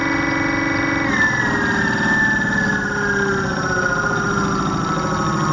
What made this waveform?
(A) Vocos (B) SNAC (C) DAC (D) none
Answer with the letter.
D